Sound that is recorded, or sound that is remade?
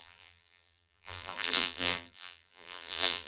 remade